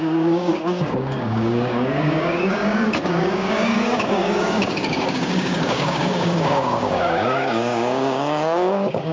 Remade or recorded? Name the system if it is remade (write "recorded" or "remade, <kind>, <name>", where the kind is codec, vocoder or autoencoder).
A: remade, codec, DAC